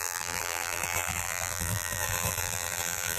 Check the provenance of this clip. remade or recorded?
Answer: remade